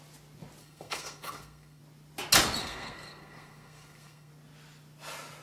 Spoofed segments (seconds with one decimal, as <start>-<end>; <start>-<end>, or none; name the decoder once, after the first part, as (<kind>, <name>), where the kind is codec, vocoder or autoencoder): 0.6-1.8 (codec, SNAC); 2.6-4.3